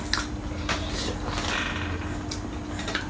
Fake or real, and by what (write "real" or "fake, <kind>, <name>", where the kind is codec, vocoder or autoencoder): real